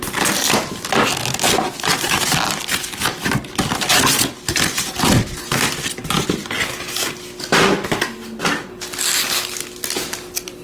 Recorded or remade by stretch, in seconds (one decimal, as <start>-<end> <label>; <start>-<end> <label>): 0.0-10.6 recorded